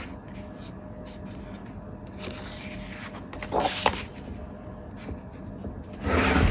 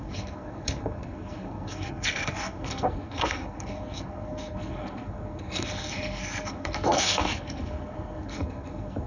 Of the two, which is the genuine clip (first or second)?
first